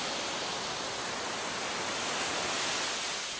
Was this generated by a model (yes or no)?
no